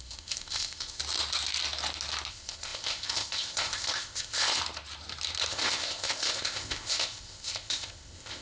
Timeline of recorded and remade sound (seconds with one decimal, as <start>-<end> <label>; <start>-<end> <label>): 0.0-1.0 remade; 1.0-2.3 recorded; 2.3-4.6 remade; 4.6-5.5 recorded; 5.5-8.4 remade

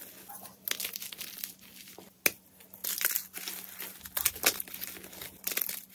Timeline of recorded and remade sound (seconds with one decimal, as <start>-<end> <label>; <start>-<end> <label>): 0.0-5.9 recorded